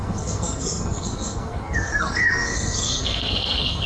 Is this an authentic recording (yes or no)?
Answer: no